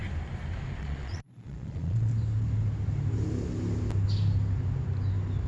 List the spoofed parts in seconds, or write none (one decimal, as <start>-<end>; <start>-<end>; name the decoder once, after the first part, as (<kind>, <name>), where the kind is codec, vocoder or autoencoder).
0.8-2.1 (vocoder, Vocos)